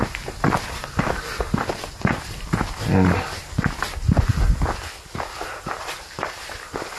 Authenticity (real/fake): real